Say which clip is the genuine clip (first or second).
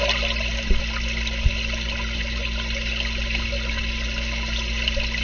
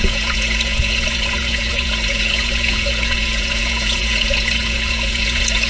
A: first